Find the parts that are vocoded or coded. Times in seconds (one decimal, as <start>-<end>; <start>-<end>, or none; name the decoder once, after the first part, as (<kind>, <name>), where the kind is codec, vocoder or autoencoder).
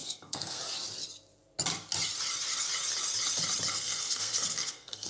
0.0-0.6 (codec, SNAC); 3.7-5.1